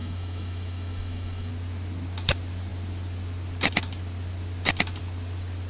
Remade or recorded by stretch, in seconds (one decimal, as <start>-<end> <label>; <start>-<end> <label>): 0.0-1.5 remade; 1.5-5.7 recorded